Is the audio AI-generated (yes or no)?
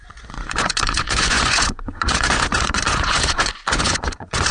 yes